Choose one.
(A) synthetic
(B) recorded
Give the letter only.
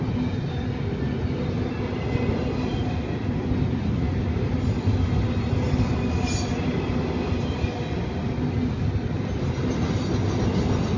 B